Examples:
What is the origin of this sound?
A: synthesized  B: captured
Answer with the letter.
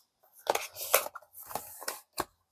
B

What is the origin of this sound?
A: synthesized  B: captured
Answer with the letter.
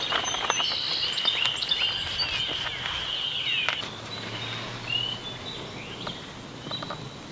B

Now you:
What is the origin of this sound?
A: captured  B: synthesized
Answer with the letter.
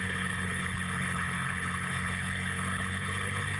B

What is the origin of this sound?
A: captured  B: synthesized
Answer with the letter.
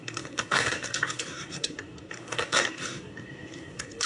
B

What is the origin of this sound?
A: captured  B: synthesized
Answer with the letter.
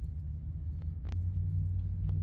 A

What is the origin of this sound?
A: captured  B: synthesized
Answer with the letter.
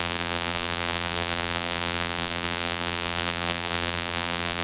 B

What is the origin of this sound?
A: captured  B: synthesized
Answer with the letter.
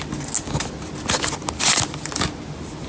A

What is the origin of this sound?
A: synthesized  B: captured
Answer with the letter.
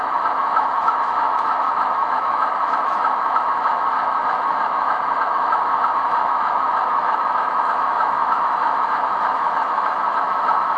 A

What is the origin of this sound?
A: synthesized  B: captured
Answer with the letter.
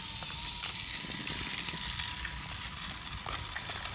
B